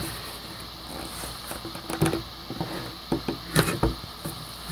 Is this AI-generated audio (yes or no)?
yes